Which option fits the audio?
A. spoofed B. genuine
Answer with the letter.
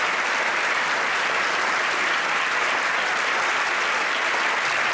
B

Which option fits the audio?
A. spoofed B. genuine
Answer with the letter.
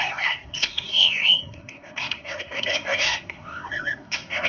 A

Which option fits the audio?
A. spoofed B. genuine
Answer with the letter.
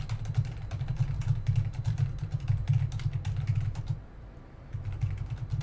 B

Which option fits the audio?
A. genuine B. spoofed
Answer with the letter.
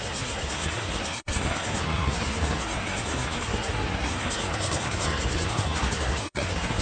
B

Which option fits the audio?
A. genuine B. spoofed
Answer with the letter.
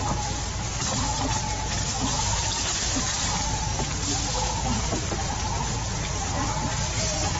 A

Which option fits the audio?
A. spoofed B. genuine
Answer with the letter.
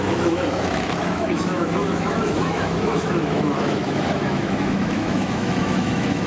A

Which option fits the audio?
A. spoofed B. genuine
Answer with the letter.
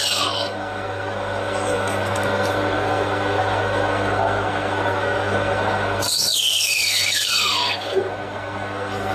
A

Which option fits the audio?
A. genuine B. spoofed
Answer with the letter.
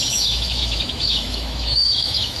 B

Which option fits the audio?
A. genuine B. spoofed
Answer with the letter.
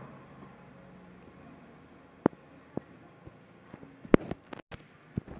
A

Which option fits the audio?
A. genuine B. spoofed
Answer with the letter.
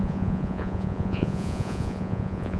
B